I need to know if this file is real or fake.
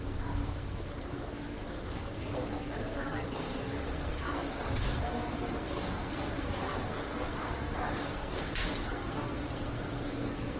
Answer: fake